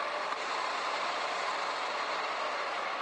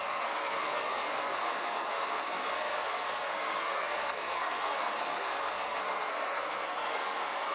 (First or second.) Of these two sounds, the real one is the first